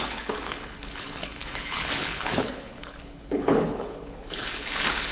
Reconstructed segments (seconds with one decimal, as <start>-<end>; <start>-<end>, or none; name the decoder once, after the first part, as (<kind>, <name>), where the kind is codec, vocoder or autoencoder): 0.0-5.1 (codec, HILCodec)